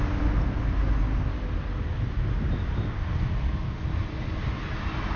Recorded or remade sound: recorded